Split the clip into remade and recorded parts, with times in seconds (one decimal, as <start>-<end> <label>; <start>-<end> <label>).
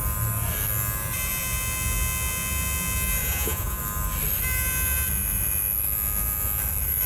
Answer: 0.0-3.2 recorded; 3.2-3.8 remade; 3.8-7.1 recorded